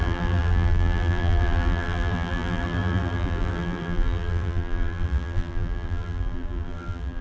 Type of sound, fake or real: fake